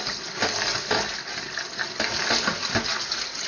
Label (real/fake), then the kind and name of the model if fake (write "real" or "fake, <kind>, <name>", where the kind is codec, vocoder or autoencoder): real